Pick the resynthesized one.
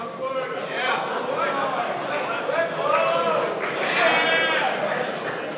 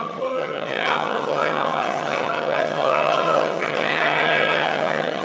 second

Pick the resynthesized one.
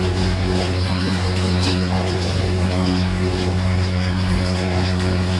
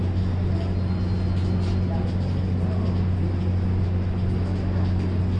first